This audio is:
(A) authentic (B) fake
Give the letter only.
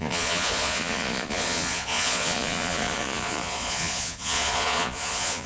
B